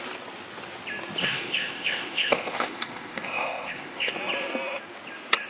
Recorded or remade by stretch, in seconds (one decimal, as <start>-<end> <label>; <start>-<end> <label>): 0.0-1.2 recorded; 1.2-4.1 remade; 4.1-5.5 recorded